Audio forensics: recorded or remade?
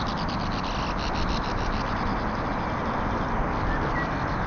recorded